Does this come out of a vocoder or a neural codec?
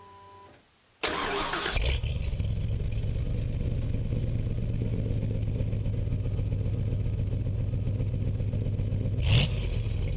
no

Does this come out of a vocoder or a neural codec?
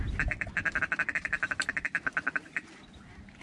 yes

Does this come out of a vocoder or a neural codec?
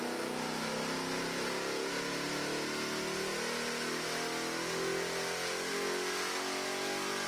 no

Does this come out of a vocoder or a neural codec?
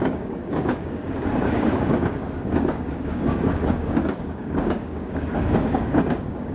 yes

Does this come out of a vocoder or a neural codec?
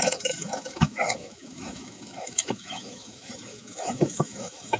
yes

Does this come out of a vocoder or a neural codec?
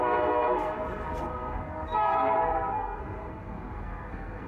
yes